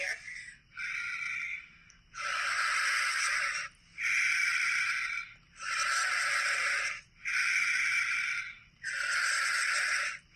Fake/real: real